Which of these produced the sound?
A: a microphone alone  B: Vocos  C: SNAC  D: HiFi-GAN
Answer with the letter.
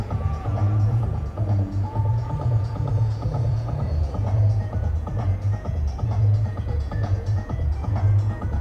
B